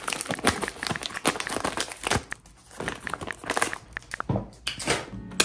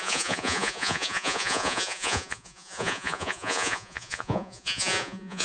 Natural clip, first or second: first